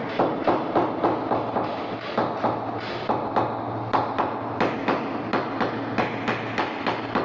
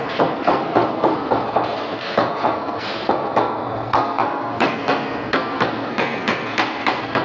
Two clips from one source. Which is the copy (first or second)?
second